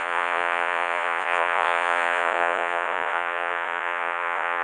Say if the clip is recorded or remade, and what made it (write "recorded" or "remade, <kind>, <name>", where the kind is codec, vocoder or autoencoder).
remade, vocoder, Vocos